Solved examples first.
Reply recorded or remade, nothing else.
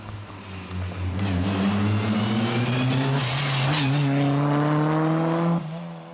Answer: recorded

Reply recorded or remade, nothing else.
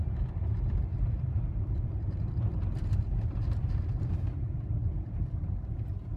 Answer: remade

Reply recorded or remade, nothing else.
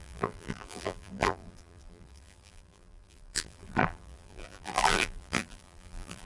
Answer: remade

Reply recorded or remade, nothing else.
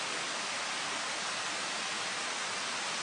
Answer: recorded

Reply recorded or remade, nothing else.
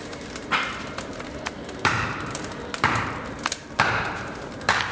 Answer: remade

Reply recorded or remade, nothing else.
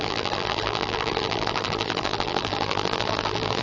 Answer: remade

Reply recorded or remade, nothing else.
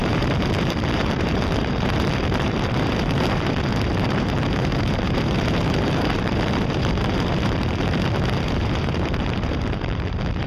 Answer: remade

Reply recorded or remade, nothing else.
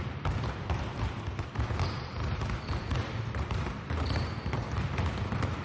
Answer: remade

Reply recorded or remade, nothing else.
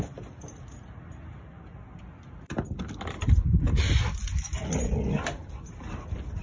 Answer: recorded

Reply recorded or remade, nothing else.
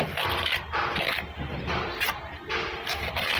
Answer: remade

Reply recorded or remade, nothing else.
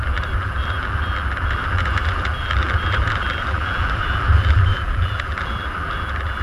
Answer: remade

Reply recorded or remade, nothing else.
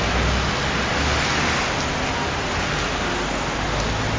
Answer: recorded